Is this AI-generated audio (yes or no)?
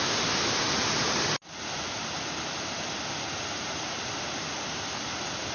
no